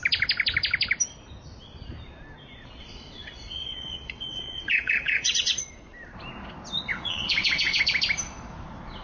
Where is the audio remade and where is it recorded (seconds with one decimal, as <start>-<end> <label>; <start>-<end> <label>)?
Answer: 0.0-2.8 recorded; 2.8-5.6 remade; 5.6-6.9 recorded; 6.9-7.8 remade; 7.8-9.0 recorded